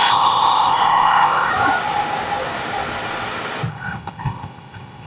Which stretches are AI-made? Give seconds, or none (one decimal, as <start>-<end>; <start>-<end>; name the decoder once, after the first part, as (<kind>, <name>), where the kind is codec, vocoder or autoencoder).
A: 0.0-1.5 (codec, ZipCodec); 3.7-5.1